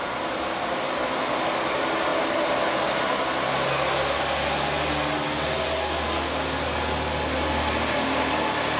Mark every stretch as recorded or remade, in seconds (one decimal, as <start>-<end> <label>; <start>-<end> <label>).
0.0-8.8 recorded